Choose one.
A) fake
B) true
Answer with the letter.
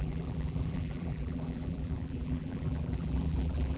A